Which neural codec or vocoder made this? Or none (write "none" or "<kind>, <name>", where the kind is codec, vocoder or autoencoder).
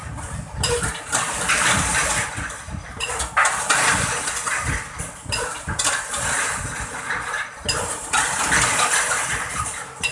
none